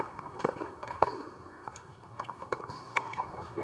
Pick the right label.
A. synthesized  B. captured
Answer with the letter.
A